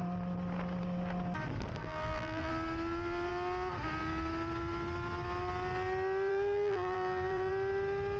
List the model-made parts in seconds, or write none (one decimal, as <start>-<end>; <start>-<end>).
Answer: 1.8-2.5; 6.3-7.5